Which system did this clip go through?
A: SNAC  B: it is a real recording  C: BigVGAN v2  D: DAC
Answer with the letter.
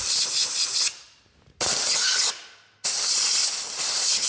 B